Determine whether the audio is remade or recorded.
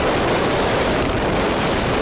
remade